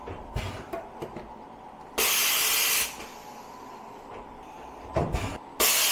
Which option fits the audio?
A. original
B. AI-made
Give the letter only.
A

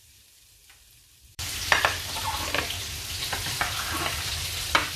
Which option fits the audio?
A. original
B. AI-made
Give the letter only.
B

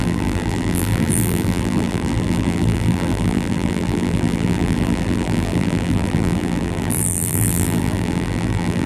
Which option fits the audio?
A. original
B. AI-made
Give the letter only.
B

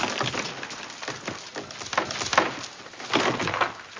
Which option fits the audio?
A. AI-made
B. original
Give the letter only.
B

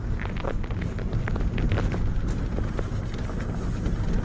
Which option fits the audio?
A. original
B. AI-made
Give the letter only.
A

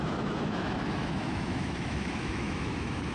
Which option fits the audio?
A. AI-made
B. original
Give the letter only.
A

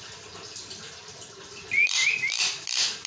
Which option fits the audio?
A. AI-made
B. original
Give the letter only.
B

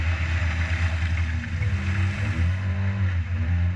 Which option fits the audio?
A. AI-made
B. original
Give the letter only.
B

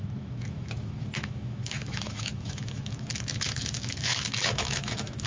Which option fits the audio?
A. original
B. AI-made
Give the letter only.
B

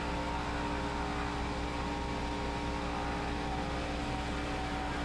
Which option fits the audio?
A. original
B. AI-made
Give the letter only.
A